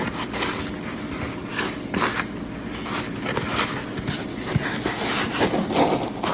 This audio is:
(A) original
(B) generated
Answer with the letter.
A